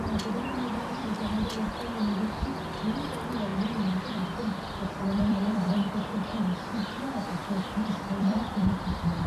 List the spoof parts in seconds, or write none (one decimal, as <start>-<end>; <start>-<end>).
3.5-5.9; 7.4-9.3